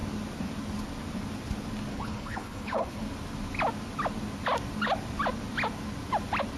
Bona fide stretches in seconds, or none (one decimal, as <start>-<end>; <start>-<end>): 0.0-1.9; 3.0-6.6